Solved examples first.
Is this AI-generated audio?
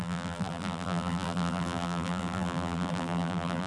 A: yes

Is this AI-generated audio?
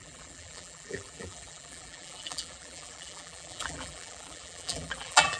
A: yes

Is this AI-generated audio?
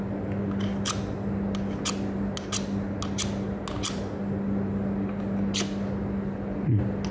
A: no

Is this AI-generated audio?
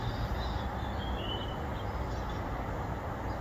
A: no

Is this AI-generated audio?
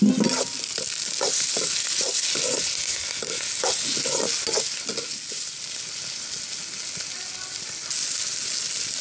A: no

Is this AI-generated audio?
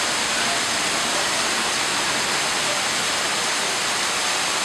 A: no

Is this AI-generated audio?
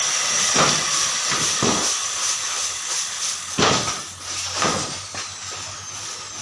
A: no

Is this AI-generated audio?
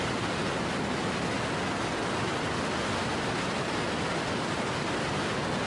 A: no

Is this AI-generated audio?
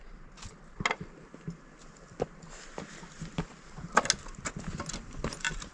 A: no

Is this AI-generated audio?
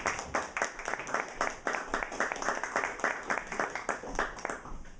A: no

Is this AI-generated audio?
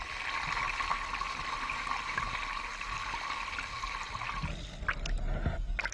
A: no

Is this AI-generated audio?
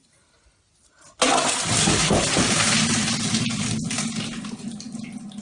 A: no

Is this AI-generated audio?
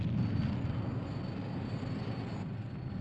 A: no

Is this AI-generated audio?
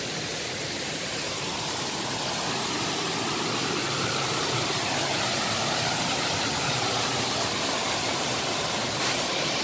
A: yes